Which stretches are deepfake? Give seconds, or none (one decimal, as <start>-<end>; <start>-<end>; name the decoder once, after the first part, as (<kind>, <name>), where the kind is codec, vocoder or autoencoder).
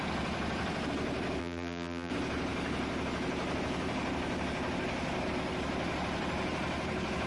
1.4-2.1 (vocoder, BigVGAN v2)